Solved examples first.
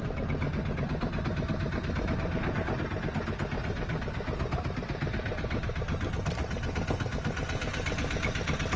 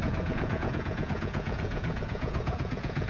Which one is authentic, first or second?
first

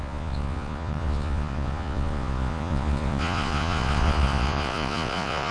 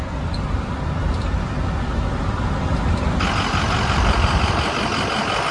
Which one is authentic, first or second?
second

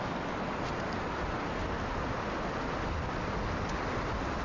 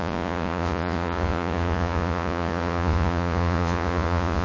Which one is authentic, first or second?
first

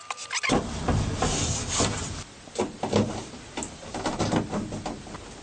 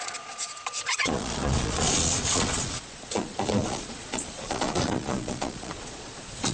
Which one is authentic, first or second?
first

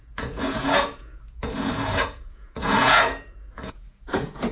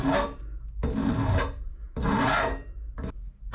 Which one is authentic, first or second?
second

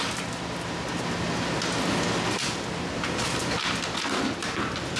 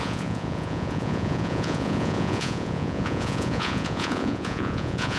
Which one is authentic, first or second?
first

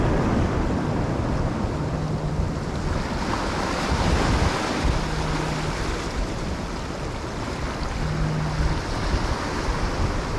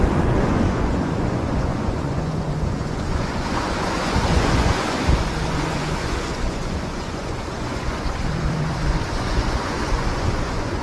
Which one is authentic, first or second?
first